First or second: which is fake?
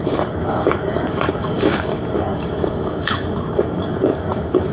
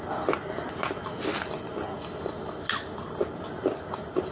first